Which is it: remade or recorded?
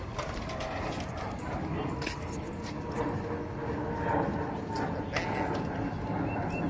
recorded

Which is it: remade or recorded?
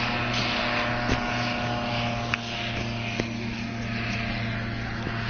recorded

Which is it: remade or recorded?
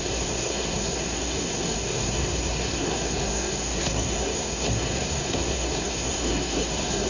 remade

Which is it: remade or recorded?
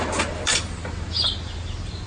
recorded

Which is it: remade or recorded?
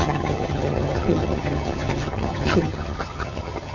remade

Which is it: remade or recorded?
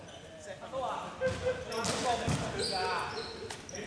recorded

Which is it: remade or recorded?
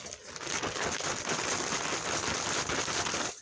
recorded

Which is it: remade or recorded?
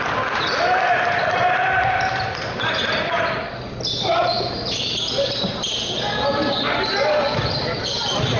remade